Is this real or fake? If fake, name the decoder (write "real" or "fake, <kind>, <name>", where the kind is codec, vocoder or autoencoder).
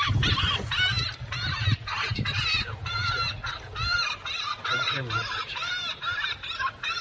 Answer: real